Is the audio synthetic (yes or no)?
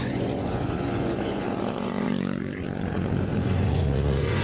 yes